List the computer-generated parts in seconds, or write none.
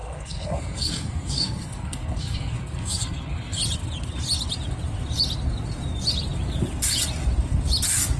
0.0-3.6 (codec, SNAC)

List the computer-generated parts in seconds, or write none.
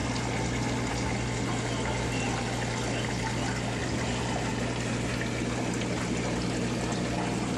none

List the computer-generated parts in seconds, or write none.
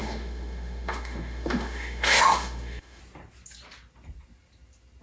0.0-3.0 (autoencoder, DAC-VAE)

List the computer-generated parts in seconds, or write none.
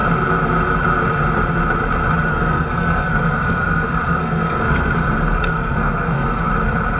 2.3-6.5 (codec, SNAC)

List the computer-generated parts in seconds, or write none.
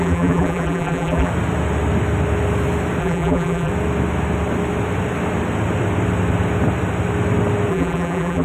0.0-1.3 (vocoder, BigVGAN v2); 3.0-3.7; 7.7-8.4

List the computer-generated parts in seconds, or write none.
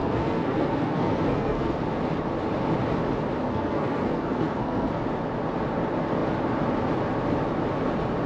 0.0-1.8 (codec, SNAC); 3.5-5.0